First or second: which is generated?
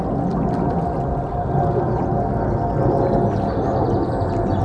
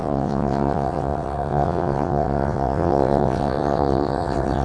second